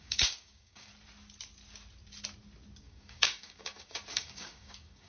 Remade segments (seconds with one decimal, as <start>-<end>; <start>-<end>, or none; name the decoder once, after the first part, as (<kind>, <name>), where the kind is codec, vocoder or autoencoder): 0.0-0.9 (codec, DAC); 2.8-5.1